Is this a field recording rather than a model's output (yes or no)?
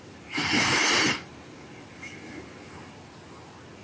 yes